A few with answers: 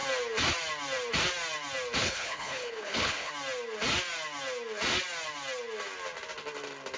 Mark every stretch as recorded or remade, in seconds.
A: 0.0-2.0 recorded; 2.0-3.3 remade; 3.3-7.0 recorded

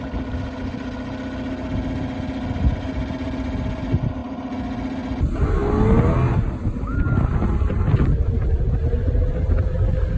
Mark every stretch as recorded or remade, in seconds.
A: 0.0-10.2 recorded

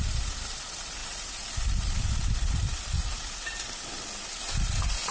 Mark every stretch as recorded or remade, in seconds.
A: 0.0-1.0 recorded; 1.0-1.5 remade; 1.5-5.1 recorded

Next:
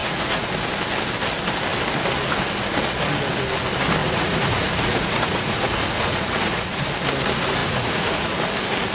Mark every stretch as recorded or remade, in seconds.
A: 0.0-0.5 remade; 0.5-4.0 recorded; 4.0-6.8 remade; 6.8-7.6 recorded; 7.6-8.4 remade; 8.4-8.9 recorded

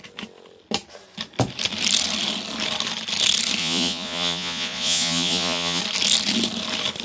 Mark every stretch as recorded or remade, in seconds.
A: 0.0-3.6 recorded; 3.6-5.8 remade; 5.8-7.0 recorded